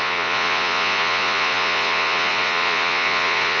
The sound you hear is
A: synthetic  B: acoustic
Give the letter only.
A